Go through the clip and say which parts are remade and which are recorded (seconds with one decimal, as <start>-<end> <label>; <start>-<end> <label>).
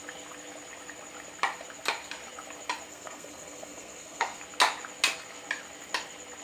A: 0.0-2.9 recorded; 2.9-4.4 remade; 4.4-6.4 recorded